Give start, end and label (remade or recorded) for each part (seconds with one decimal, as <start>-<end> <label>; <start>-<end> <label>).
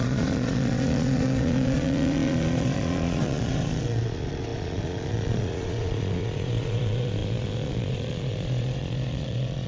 0.0-9.7 remade